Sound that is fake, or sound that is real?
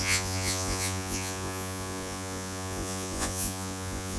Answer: fake